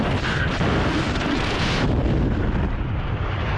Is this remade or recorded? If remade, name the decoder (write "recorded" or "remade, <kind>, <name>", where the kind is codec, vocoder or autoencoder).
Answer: recorded